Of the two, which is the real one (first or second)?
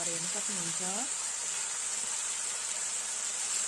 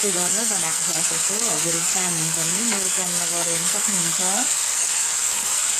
first